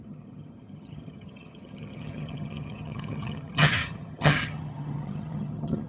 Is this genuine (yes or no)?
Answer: no